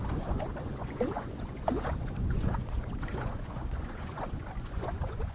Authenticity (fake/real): fake